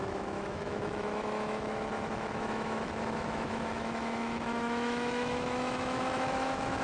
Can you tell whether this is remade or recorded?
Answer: remade